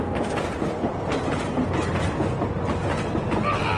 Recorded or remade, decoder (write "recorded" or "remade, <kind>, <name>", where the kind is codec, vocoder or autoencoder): recorded